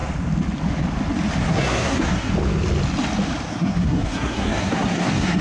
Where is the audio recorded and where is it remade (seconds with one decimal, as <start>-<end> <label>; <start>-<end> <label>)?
0.0-1.4 recorded; 1.4-2.3 remade; 2.3-3.5 recorded; 3.5-5.4 remade